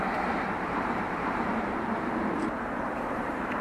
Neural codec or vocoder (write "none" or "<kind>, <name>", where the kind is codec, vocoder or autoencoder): vocoder, BigVGAN v2